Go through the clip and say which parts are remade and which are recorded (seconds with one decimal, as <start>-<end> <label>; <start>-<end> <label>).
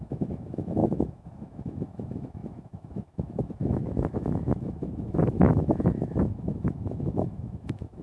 0.0-8.0 remade